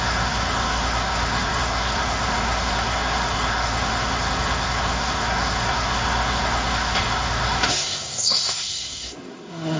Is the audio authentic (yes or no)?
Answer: no